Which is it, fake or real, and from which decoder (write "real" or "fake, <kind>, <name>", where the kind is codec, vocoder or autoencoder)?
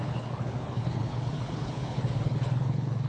fake, codec, HILCodec